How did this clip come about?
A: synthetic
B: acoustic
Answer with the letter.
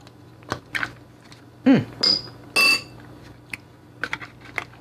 B